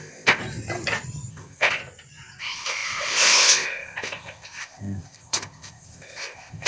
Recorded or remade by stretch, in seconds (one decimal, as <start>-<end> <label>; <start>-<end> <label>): 0.0-0.4 remade; 0.4-1.3 recorded; 1.3-1.8 remade; 1.8-2.4 recorded; 2.4-6.7 remade